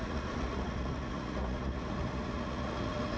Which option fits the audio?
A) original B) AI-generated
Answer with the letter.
B